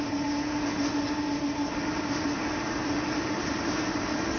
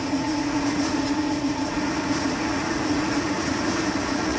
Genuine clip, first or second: first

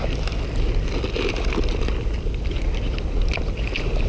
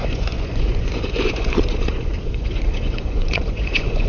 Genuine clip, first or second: first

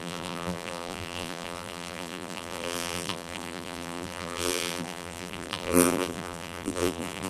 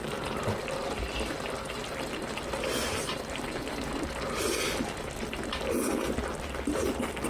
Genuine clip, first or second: second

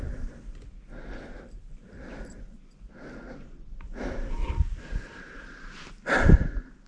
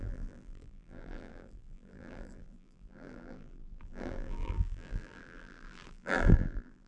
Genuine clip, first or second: first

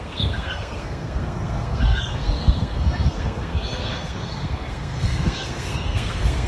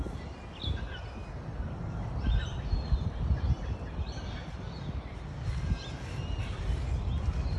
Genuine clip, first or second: second